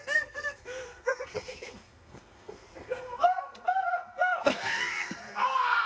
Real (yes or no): no